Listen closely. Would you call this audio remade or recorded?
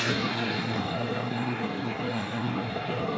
remade